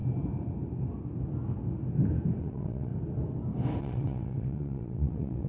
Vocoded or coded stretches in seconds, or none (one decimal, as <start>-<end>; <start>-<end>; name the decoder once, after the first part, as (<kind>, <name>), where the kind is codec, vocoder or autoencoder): 2.4-2.9 (vocoder, WaveNeXt); 3.8-5.5